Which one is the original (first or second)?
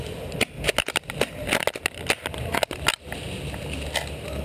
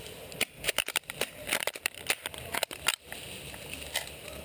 first